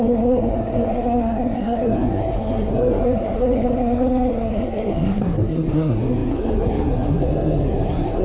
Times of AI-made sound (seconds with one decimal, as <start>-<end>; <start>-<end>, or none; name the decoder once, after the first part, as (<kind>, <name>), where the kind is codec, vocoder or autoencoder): 0.0-8.2 (codec, SNAC)